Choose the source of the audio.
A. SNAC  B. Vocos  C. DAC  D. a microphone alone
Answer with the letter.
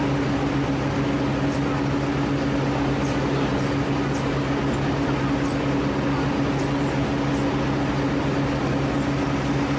D